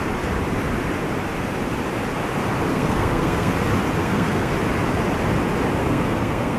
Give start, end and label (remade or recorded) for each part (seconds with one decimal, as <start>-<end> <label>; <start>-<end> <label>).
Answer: 0.0-2.7 recorded; 2.7-3.5 remade; 3.5-4.0 recorded; 4.0-4.5 remade; 4.5-5.8 recorded; 5.8-6.6 remade